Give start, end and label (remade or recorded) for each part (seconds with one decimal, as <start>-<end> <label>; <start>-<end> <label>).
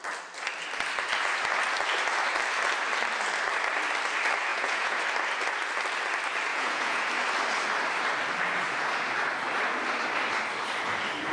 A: 0.0-4.5 recorded; 4.5-5.0 remade; 5.0-6.5 recorded; 6.5-7.0 remade; 7.0-11.3 recorded